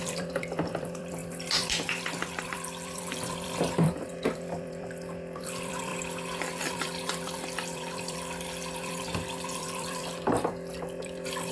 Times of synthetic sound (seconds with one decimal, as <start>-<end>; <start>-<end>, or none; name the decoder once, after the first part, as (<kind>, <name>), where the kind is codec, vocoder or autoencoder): 0.0-11.5 (vocoder, BigVGAN v2)